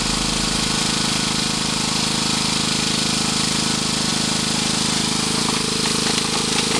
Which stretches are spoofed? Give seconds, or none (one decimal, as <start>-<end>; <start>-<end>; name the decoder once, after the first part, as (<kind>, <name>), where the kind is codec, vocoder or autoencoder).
none